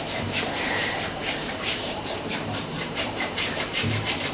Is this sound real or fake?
fake